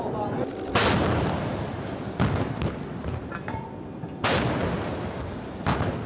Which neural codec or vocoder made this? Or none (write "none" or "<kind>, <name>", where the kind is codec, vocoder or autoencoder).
none